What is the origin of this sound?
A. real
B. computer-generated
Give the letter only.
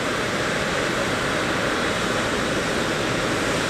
A